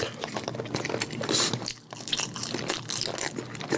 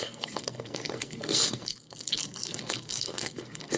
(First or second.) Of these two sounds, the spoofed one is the second